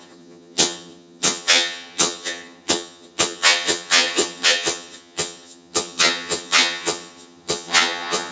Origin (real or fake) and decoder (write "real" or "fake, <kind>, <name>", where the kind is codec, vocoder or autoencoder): fake, vocoder, HiFi-GAN